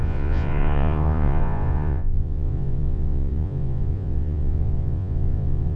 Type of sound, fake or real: fake